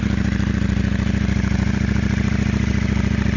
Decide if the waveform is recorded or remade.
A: recorded